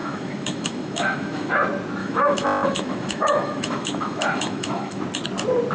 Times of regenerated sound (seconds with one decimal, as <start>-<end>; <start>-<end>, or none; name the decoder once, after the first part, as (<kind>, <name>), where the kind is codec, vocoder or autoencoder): 0.0-1.5 (autoencoder, DAC-VAE); 2.0-5.0